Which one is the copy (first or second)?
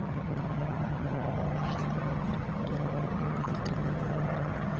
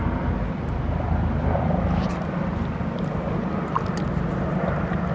first